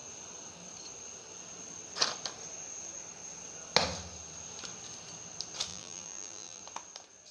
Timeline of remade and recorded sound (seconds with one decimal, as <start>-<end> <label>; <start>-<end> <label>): 0.0-5.7 recorded; 5.7-6.6 remade; 6.6-7.3 recorded

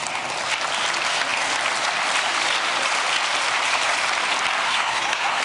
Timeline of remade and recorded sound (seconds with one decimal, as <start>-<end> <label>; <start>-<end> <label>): 0.0-4.7 recorded; 4.7-5.4 remade

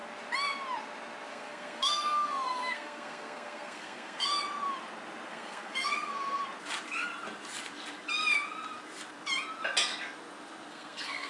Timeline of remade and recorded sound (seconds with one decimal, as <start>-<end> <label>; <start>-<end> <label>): 0.0-1.3 recorded; 1.3-4.3 remade; 4.3-5.3 recorded; 5.3-6.4 remade; 6.4-10.7 recorded; 10.7-11.3 remade

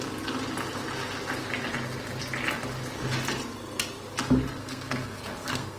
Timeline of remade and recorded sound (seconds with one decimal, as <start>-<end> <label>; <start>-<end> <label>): 0.0-4.6 recorded; 4.6-5.8 remade

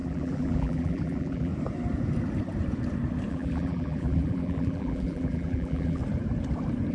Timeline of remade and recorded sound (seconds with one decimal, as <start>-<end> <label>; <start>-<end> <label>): 0.0-1.5 remade; 1.5-3.3 recorded; 3.3-6.0 remade; 6.0-6.9 recorded

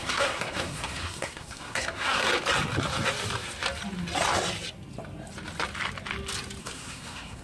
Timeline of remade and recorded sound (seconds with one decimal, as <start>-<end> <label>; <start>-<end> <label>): 0.0-2.3 remade; 2.3-6.6 recorded; 6.6-7.4 remade